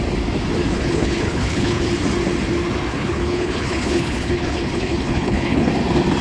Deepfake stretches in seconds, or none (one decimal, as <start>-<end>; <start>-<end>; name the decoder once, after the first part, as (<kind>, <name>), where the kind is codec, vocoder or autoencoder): 0.7-1.8 (codec, HILCodec); 2.9-5.7